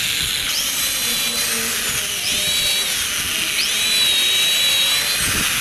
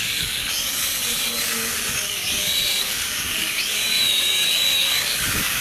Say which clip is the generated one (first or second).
second